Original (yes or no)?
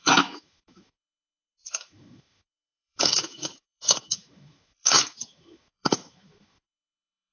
no